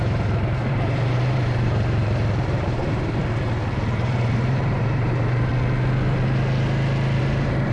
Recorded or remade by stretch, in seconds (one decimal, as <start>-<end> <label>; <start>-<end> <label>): 0.0-3.2 remade; 3.2-3.8 recorded; 3.8-5.5 remade; 5.5-7.2 recorded; 7.2-7.7 remade